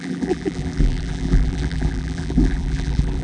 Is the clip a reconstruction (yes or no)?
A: yes